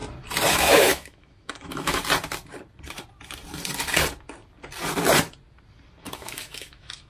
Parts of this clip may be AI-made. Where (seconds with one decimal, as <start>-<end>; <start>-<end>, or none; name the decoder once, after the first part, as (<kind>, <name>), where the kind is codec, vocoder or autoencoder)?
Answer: 0.5-2.0 (autoencoder, DAC-VAE); 6.0-7.1